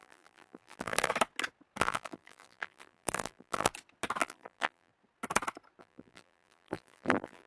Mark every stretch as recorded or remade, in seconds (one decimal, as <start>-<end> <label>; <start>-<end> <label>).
0.0-1.1 remade; 1.1-1.8 recorded; 1.8-3.7 remade; 3.7-4.2 recorded; 4.2-4.9 remade; 4.9-5.8 recorded; 5.8-7.5 remade